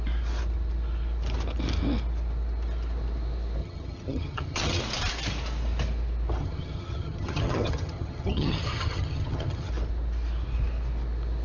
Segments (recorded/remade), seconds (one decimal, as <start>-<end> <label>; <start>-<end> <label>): 0.0-3.6 recorded; 3.6-4.8 remade; 4.8-6.4 recorded; 6.4-9.7 remade; 9.7-11.4 recorded